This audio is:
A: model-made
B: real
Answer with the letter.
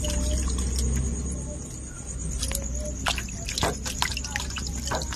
B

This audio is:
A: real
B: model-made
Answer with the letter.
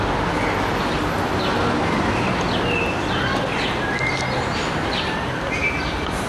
A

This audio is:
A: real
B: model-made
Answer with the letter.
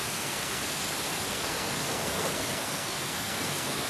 B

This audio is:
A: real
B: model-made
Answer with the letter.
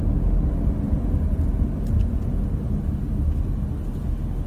A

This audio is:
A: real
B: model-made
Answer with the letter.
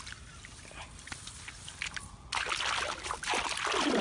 A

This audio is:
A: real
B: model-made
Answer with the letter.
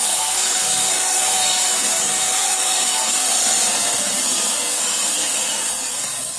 B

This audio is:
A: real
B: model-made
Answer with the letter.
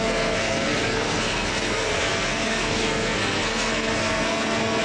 B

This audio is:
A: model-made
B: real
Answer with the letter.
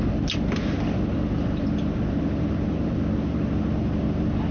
B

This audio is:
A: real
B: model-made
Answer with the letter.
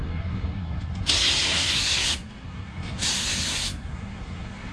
B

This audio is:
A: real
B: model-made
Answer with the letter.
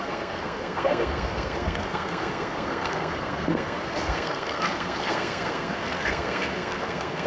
B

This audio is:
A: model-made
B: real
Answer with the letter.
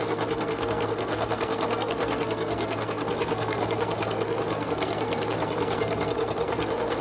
A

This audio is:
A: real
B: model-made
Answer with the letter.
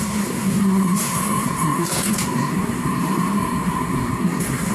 B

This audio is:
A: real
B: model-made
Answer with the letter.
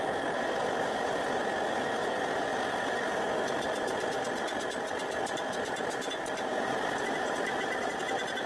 A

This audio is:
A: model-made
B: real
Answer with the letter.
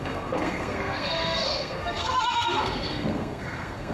A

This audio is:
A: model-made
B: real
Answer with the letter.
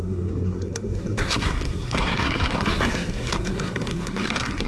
A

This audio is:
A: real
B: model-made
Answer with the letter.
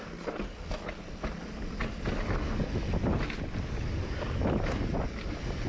A